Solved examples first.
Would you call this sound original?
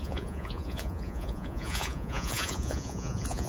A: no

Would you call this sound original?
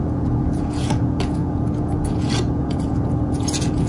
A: no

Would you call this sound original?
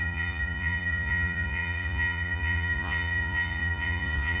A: no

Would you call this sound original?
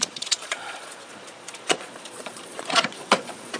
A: no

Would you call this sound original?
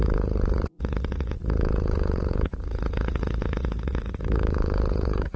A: no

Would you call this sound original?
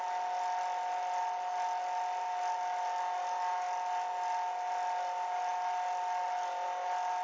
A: yes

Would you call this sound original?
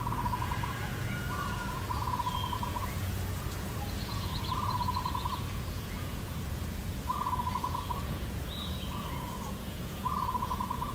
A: no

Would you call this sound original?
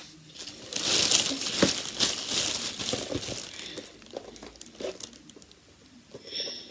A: yes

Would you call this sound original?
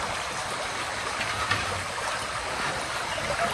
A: yes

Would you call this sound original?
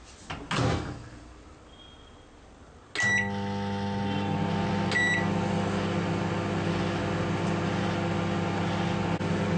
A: yes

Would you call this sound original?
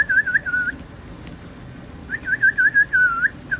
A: yes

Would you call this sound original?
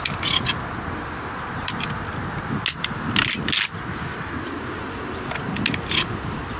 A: yes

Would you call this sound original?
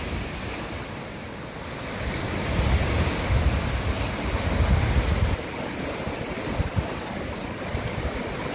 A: yes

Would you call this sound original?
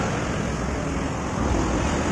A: yes